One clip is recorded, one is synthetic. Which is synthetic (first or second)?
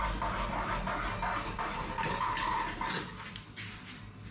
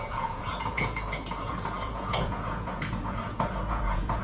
second